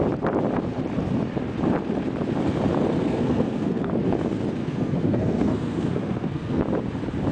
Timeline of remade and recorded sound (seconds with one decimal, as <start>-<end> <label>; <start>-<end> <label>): 0.0-3.0 recorded; 3.0-3.9 remade; 3.9-4.6 recorded; 4.6-6.6 remade; 6.6-7.3 recorded